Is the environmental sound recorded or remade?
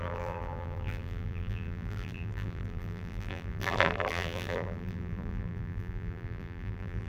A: remade